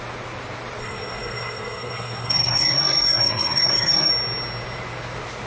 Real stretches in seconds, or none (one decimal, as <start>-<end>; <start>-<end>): 0.0-0.8; 4.1-5.5